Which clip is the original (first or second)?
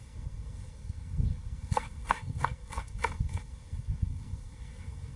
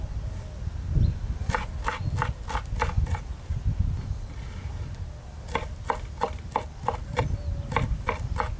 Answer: second